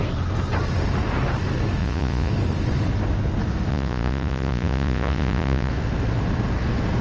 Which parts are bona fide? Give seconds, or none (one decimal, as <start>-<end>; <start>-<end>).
0.0-1.8; 2.3-3.7; 5.7-7.0